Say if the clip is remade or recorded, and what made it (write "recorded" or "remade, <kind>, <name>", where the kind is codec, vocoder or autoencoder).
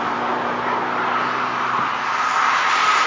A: recorded